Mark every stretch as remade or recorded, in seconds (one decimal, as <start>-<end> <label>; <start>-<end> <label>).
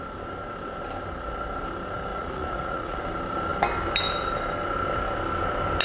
0.0-2.1 recorded; 2.1-3.0 remade; 3.0-5.8 recorded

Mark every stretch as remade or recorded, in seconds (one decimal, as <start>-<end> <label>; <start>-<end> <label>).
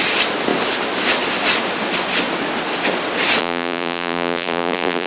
0.0-3.4 recorded; 3.4-5.1 remade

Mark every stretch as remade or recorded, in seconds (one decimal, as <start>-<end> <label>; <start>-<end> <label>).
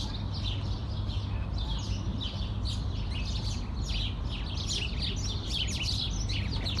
0.0-6.8 recorded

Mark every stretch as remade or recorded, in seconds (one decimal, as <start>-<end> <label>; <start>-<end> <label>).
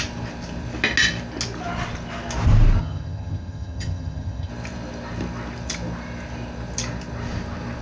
0.0-2.8 recorded; 2.8-4.5 remade; 4.5-7.8 recorded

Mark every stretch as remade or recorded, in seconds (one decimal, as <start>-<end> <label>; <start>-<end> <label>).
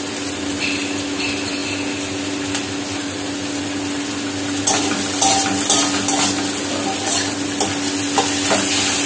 0.0-9.1 recorded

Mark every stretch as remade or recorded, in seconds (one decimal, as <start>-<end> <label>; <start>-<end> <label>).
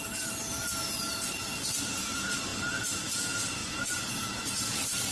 0.0-3.6 recorded; 3.6-4.1 remade; 4.1-5.1 recorded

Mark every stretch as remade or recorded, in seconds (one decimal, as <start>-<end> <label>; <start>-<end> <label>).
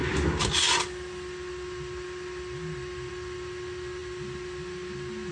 0.0-5.3 recorded